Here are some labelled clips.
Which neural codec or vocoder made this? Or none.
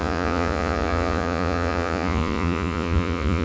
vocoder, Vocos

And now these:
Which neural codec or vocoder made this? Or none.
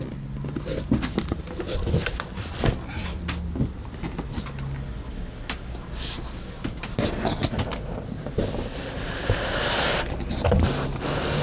none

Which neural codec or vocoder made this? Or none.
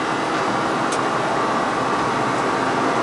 none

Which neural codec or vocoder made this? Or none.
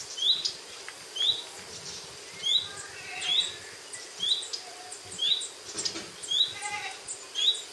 none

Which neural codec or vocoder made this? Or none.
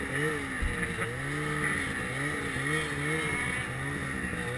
none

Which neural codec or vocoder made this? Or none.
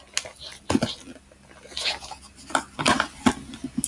none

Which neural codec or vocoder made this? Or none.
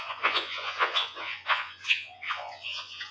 vocoder, Vocos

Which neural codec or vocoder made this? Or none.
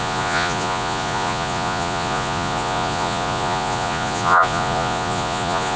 vocoder, Vocos